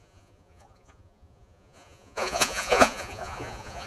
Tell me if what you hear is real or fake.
fake